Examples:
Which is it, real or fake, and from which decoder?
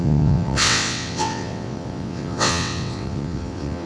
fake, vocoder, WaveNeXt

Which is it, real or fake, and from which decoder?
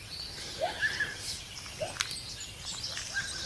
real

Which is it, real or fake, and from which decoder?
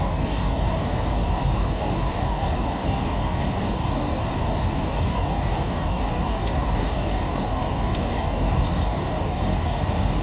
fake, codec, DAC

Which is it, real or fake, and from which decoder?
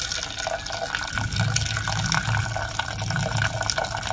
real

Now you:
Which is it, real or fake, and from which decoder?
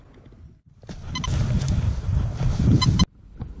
real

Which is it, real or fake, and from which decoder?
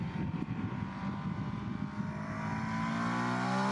real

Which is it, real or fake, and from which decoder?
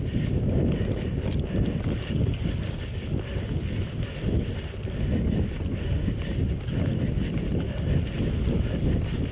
real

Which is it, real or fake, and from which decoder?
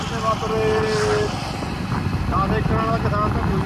real